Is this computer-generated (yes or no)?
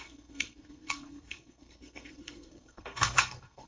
yes